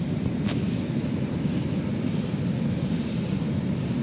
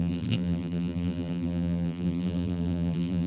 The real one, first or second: first